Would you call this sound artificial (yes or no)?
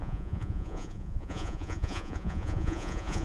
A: yes